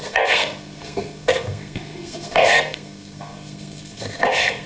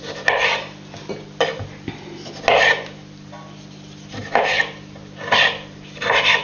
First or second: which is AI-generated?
first